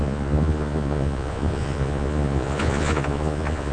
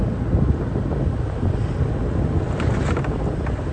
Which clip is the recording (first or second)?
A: second